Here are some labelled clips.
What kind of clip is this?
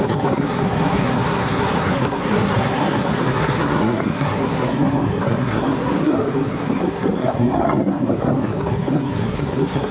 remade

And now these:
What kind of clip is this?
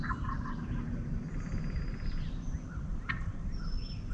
recorded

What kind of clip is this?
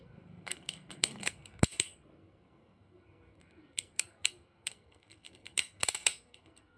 remade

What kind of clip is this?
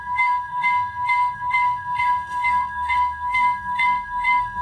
remade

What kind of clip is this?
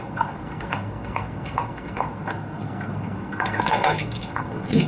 remade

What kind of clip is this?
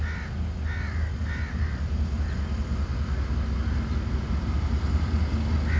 recorded